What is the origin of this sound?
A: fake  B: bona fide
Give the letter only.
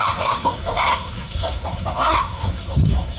A